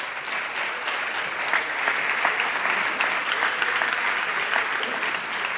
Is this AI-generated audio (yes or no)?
no